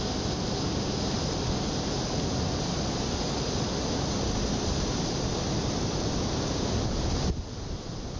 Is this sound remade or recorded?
recorded